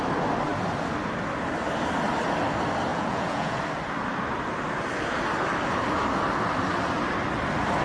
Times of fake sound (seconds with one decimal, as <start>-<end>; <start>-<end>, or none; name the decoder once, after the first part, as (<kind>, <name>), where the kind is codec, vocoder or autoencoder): 2.9-3.6 (vocoder, Vocos)